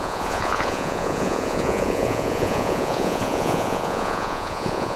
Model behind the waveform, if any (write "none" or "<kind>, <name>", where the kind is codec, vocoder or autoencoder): vocoder, Vocos